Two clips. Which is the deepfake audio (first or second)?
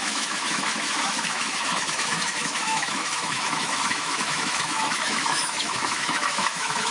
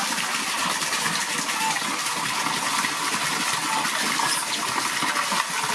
first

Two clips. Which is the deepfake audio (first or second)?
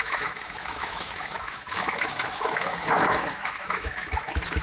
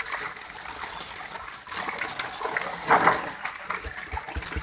first